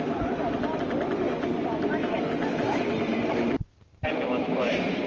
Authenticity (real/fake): fake